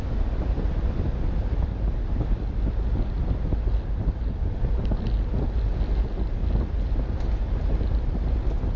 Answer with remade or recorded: recorded